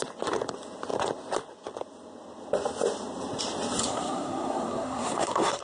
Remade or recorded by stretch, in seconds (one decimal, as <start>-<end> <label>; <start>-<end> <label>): 0.0-3.8 recorded; 3.8-5.6 remade